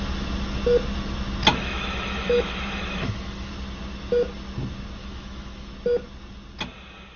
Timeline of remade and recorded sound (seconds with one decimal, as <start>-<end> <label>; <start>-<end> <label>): 0.0-1.5 recorded; 1.5-3.5 remade; 3.5-5.0 recorded; 5.0-5.7 remade; 5.7-7.2 recorded